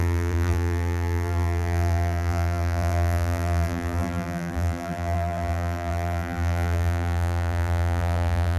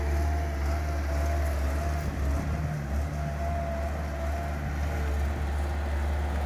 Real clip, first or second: second